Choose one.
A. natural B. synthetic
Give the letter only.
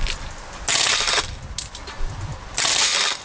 A